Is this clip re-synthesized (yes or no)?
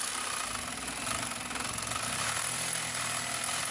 no